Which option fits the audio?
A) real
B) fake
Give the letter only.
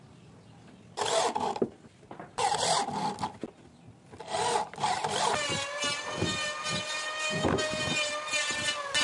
A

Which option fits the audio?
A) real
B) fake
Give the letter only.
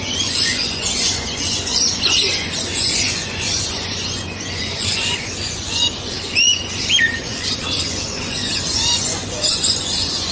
B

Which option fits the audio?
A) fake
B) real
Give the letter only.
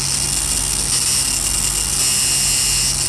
B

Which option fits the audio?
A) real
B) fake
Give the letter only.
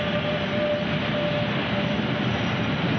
A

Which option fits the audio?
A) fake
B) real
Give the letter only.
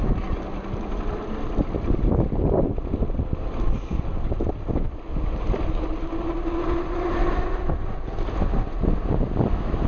B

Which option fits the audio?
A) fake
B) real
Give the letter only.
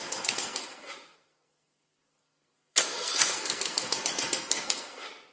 A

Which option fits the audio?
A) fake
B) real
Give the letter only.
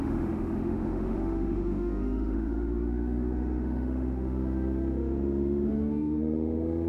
A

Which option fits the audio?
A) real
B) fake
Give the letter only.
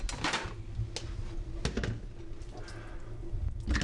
A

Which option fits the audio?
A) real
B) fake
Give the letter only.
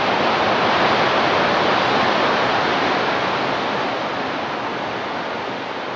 A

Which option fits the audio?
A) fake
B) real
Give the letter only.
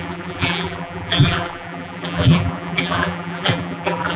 A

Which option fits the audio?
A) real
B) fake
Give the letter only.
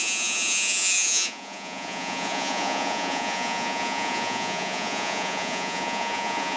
B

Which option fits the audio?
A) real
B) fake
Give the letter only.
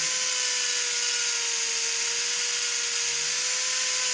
A